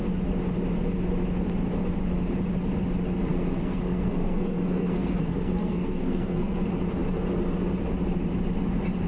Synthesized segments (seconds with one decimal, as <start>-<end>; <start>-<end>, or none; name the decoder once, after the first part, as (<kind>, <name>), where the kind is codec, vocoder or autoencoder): 3.3-6.5 (codec, SNAC)